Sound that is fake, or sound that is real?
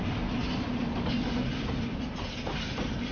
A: real